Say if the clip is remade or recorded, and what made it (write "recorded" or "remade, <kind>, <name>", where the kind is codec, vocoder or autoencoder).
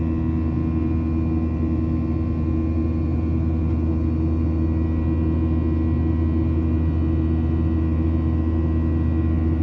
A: recorded